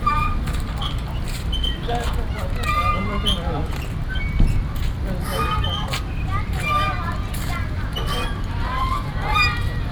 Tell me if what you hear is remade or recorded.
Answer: remade